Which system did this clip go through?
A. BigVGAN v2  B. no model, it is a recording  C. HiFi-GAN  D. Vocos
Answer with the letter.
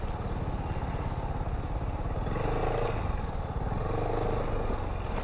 B